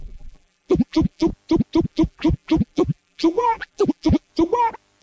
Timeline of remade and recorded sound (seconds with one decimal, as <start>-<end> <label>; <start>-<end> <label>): 0.0-1.3 remade; 1.3-1.9 recorded; 1.9-4.3 remade; 4.3-5.0 recorded